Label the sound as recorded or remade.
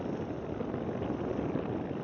recorded